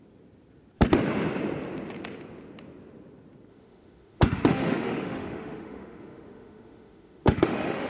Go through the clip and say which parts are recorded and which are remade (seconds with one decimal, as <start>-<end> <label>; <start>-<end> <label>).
0.0-3.5 recorded; 3.5-7.9 remade